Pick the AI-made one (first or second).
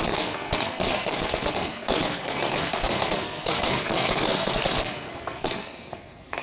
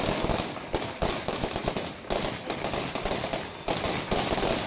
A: first